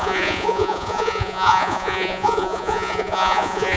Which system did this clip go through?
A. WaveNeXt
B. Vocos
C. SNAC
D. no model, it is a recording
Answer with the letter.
B